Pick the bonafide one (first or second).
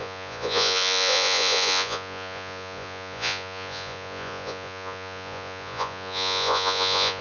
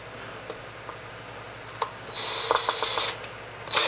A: second